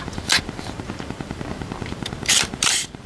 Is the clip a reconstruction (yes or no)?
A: yes